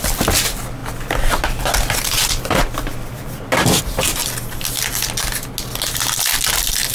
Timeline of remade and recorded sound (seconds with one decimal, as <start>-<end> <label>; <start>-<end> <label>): 0.0-0.8 recorded; 0.8-3.8 remade; 3.8-6.9 recorded